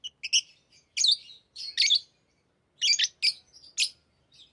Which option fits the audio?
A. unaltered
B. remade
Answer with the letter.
A